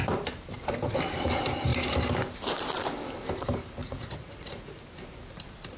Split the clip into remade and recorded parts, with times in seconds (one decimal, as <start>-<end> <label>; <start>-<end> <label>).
0.0-3.8 recorded; 3.8-4.8 remade; 4.8-5.8 recorded